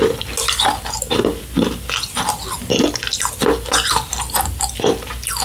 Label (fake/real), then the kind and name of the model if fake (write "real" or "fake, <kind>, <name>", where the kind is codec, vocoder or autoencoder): real